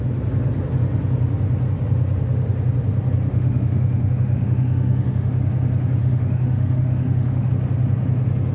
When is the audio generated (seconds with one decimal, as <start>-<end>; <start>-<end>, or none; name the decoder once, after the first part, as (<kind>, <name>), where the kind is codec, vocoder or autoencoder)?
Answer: 3.3-5.3 (autoencoder, DAC-VAE); 6.0-7.5